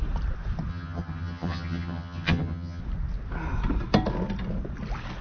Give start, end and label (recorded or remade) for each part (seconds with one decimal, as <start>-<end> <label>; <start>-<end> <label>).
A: 0.0-0.7 recorded; 0.7-2.8 remade; 2.8-5.2 recorded